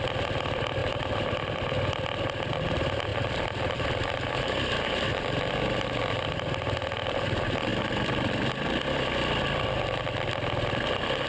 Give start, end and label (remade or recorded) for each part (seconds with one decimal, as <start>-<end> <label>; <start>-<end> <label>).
0.0-0.8 recorded; 0.8-1.6 remade; 1.6-7.7 recorded; 7.7-9.4 remade; 9.4-11.3 recorded